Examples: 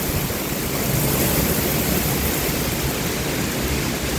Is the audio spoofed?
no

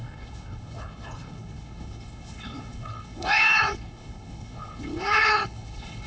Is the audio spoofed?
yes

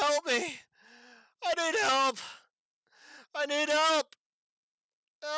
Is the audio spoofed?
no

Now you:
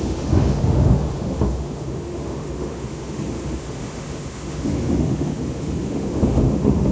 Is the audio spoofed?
yes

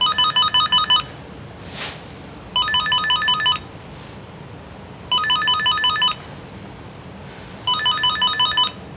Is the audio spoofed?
no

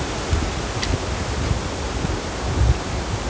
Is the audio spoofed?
no